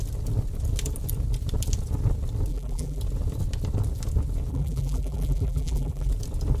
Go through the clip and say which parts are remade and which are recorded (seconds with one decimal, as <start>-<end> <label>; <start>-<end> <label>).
0.0-2.5 recorded; 2.5-3.0 remade; 3.0-4.5 recorded; 4.5-6.1 remade; 6.1-6.6 recorded